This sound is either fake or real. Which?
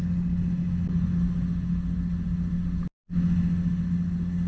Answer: real